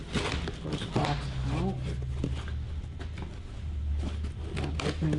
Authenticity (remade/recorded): recorded